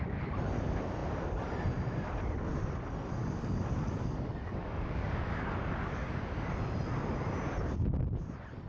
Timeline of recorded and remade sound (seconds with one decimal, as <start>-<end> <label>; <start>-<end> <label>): 0.0-3.2 recorded; 3.2-6.2 remade; 6.2-8.7 recorded